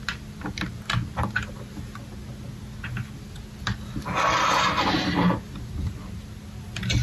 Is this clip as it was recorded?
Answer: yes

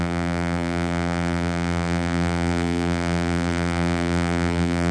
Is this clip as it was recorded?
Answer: no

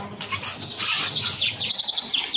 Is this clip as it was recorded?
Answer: yes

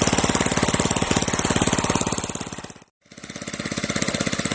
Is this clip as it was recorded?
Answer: yes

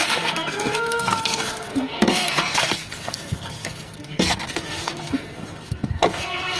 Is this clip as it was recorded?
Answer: no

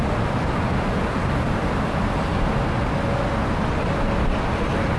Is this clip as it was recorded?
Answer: yes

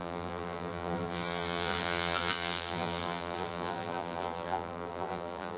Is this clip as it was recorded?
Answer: no